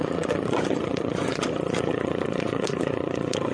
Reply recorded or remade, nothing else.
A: remade